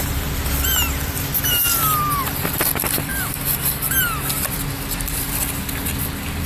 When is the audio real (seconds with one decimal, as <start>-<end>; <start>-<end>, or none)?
0.0-3.1; 3.9-6.5